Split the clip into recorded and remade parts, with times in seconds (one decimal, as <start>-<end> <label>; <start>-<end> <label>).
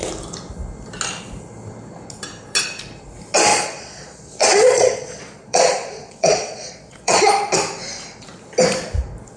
0.0-3.5 recorded; 3.5-7.2 remade; 7.2-9.4 recorded